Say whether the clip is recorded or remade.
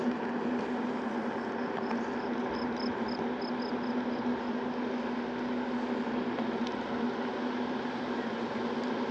recorded